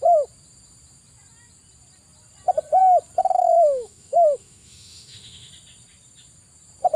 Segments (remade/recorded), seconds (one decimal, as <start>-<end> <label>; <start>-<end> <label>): 0.0-3.2 recorded; 3.2-5.5 remade; 5.5-7.0 recorded